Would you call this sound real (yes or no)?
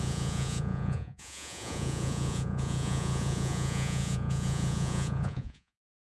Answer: no